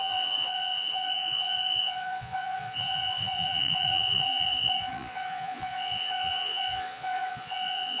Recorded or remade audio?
remade